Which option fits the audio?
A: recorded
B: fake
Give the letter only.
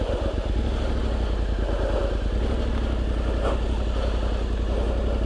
A